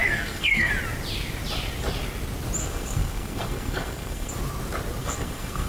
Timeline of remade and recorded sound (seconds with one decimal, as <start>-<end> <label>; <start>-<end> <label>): 0.0-0.7 remade; 0.7-2.6 recorded; 2.6-4.3 remade; 4.3-5.0 recorded; 5.0-5.7 remade